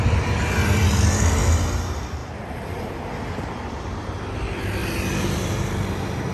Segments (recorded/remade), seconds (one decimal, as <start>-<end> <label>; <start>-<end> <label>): 0.0-2.2 recorded; 2.2-4.2 remade; 4.2-4.8 recorded; 4.8-5.7 remade; 5.7-6.3 recorded